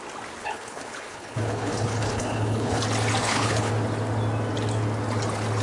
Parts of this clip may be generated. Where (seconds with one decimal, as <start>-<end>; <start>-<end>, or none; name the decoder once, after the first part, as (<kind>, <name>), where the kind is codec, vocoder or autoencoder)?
0.4-2.8 (codec, HILCodec); 3.2-3.7

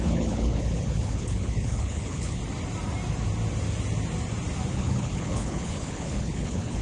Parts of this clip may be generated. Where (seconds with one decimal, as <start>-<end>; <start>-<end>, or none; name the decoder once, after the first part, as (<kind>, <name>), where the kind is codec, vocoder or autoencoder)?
0.0-2.4 (codec, HILCodec); 4.7-6.8

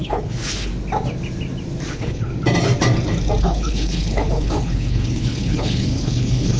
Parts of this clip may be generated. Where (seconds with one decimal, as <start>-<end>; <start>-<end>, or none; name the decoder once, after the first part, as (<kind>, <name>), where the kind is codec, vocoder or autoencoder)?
0.0-0.7 (codec, HILCodec); 1.9-2.3; 3.4-6.6

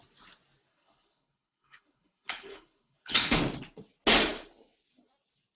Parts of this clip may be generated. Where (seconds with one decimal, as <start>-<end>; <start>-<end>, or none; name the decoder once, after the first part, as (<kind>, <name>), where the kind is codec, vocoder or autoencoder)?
0.7-3.4 (codec, HILCodec)